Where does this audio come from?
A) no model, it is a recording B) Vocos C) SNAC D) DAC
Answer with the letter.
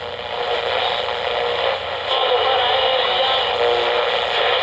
A